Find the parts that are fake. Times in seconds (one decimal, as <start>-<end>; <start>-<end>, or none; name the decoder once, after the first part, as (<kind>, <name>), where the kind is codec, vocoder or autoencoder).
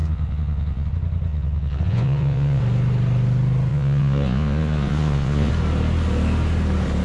0.0-0.9 (vocoder, Vocos); 1.3-2.6; 3.7-5.5